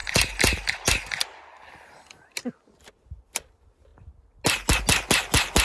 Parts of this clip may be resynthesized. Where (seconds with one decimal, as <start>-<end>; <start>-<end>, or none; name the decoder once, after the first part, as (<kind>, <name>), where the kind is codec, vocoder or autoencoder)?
none